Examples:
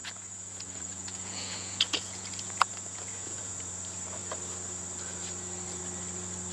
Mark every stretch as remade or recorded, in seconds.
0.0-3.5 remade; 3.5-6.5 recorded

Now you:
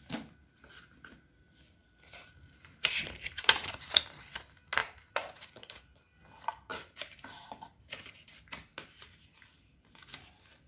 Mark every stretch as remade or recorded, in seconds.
0.0-1.8 recorded; 1.8-4.0 remade; 4.0-4.8 recorded; 4.8-6.2 remade; 6.2-6.7 recorded; 6.7-7.8 remade; 7.8-8.7 recorded; 8.7-9.8 remade; 9.8-10.7 recorded

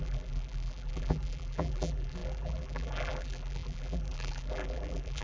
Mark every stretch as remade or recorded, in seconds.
0.0-5.2 remade

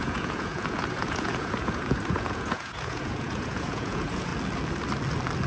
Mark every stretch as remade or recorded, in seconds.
0.0-4.3 remade; 4.3-5.5 recorded

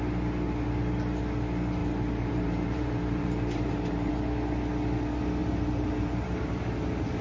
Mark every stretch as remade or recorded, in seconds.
0.0-1.8 recorded; 1.8-4.1 remade; 4.1-5.4 recorded; 5.4-6.6 remade; 6.6-7.2 recorded

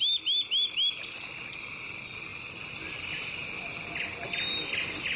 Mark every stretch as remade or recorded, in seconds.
0.0-5.2 recorded

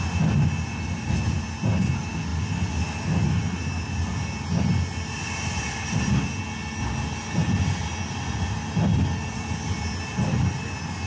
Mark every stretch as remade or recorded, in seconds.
0.0-11.1 recorded